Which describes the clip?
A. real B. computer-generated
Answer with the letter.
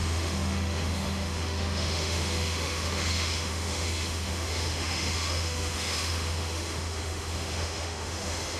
B